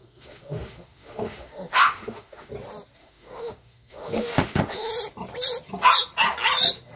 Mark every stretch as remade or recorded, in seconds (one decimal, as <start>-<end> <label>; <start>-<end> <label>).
0.0-2.5 remade; 2.5-3.0 recorded; 3.0-4.9 remade; 4.9-7.0 recorded